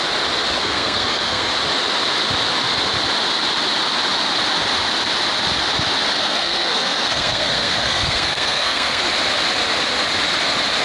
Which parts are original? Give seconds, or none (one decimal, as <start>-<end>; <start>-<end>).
0.0-0.6; 1.5-6.2; 9.0-10.8